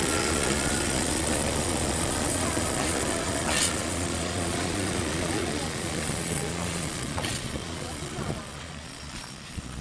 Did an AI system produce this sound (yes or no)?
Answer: yes